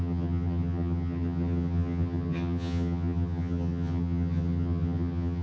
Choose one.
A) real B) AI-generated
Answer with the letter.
B